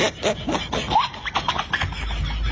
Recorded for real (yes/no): yes